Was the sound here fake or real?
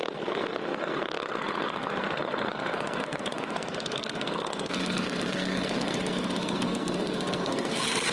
fake